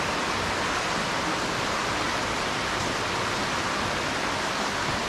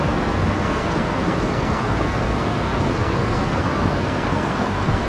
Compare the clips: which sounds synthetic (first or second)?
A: second